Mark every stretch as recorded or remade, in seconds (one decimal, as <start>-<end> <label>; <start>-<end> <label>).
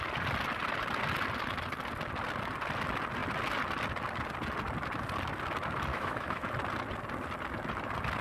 0.0-5.9 recorded; 5.9-6.5 remade; 6.5-8.2 recorded